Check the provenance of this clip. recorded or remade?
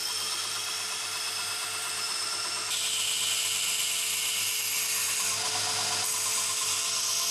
recorded